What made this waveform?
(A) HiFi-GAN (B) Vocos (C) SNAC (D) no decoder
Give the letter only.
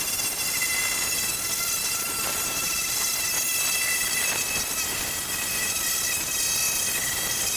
D